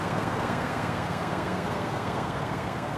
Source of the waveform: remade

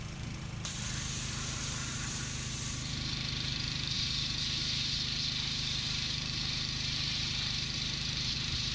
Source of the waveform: remade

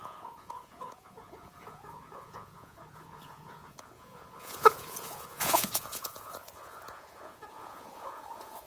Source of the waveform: remade